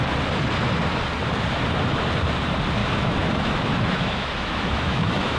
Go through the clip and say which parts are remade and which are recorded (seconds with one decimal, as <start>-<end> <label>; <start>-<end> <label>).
0.0-2.8 recorded; 2.8-5.4 remade